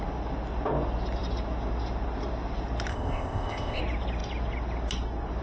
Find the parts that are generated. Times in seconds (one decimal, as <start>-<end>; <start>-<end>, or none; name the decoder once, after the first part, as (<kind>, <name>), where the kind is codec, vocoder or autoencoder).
2.9-3.8 (codec, ZipCodec)